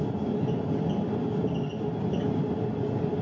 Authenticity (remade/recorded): recorded